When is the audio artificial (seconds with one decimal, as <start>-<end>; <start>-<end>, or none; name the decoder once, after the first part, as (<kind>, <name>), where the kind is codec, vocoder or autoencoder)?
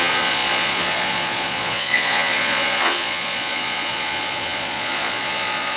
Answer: 0.0-5.8 (vocoder, Vocos)